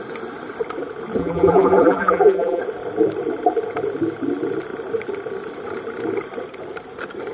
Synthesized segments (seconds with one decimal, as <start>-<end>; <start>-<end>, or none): 1.2-2.6